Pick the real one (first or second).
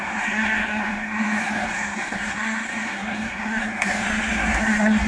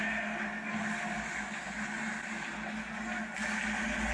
second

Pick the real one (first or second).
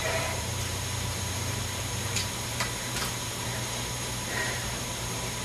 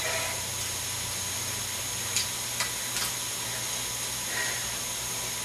second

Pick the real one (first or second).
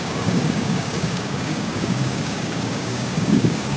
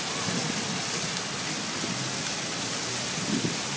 second